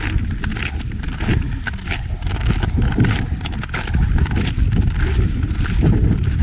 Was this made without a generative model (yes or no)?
yes